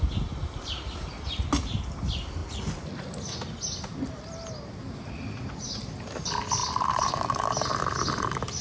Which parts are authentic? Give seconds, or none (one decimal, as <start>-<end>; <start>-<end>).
0.0-8.6